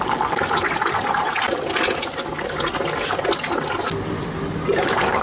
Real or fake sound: real